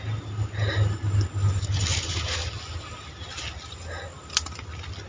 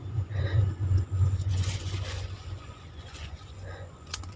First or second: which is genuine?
first